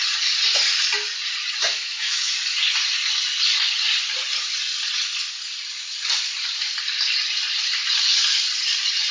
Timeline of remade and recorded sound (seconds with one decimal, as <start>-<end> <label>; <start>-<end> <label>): 0.0-1.6 recorded; 1.6-2.3 remade; 2.3-9.1 recorded